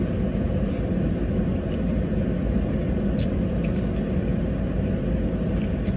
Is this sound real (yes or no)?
yes